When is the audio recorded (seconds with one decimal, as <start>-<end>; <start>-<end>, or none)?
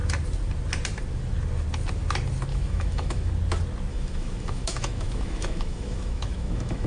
0.0-2.5; 3.3-3.9